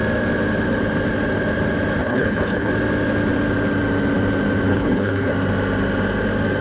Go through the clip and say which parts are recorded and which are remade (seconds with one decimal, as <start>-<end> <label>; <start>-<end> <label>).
0.0-2.0 recorded; 2.0-2.7 remade; 2.7-4.7 recorded; 4.7-5.3 remade; 5.3-6.6 recorded